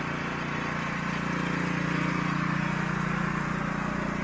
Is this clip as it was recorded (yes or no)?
yes